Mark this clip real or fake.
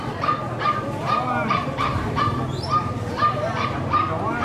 fake